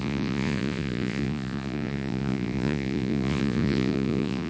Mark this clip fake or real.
fake